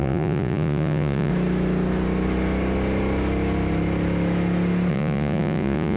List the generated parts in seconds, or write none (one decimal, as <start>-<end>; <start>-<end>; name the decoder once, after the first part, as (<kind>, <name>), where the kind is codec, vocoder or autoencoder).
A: 0.0-1.3 (vocoder, Vocos); 4.9-6.0